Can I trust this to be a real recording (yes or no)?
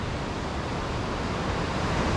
yes